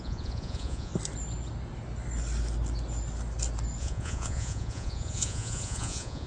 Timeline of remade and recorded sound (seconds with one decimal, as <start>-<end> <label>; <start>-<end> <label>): 0.0-0.9 remade; 0.9-3.8 recorded; 3.8-6.3 remade